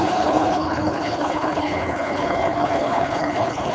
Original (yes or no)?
no